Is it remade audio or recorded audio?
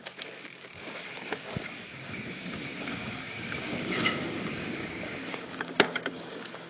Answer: remade